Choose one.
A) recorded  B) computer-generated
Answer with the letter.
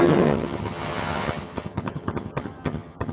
B